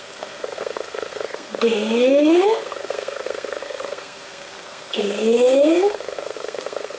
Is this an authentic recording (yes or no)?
no